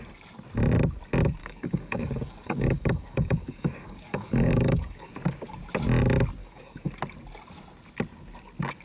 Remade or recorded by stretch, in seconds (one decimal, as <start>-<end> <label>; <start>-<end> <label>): 0.0-1.4 recorded; 1.4-5.1 remade; 5.1-6.4 recorded; 6.4-6.9 remade; 6.9-8.8 recorded